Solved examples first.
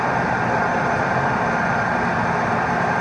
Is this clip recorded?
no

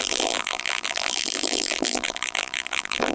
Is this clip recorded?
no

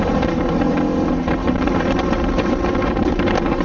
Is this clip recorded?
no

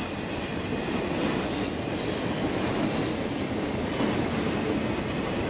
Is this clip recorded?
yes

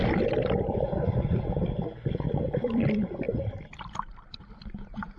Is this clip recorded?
no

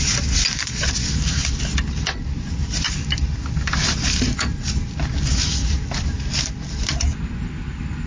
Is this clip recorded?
yes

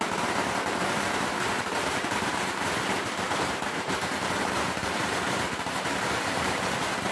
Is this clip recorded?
no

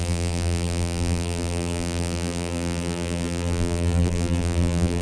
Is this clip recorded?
no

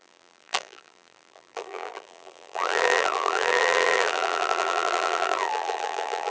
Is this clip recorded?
no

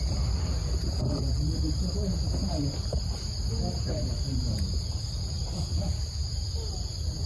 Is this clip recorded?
yes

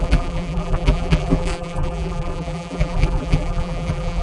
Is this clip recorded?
no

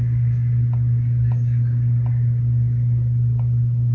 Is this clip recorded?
yes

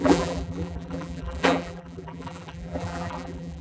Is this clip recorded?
no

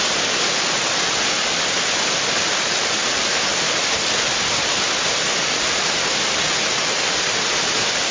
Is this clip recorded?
yes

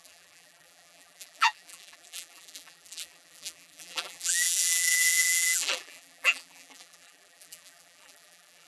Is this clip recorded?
no